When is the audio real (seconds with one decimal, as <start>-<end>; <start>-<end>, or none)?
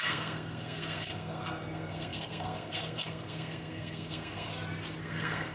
4.5-5.0